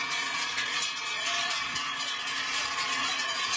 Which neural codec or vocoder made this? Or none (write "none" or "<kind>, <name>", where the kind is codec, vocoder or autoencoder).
vocoder, Vocos